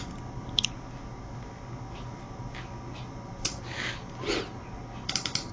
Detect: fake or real real